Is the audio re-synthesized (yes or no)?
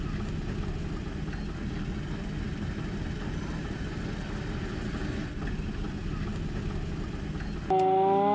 no